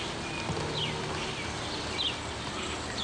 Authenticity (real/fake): real